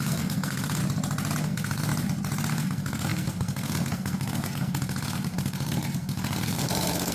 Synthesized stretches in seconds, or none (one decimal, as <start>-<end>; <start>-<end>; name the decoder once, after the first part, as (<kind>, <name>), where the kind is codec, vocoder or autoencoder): 0.0-0.8 (codec, SNAC); 1.4-1.9; 2.5-7.1